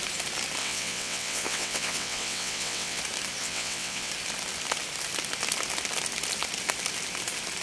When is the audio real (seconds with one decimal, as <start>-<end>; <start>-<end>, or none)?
0.0-0.6; 3.0-3.4; 4.1-7.6